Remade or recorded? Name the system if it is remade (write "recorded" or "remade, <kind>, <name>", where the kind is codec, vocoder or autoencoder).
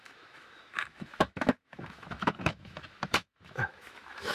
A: remade, autoencoder, DAC-VAE